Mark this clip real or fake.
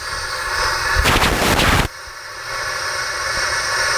real